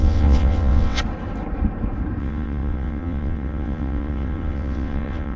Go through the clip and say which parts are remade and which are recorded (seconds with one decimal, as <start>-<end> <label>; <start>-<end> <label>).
0.0-1.0 remade; 1.0-2.2 recorded; 2.2-5.4 remade